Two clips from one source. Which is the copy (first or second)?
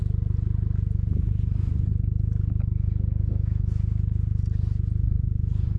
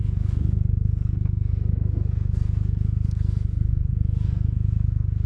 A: second